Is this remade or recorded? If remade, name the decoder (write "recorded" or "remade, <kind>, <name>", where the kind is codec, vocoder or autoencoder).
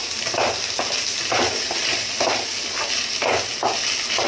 recorded